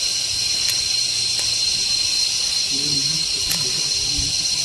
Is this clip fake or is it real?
real